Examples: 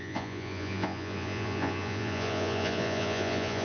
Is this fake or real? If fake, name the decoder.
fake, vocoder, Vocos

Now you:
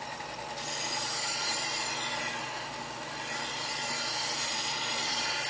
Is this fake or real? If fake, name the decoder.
real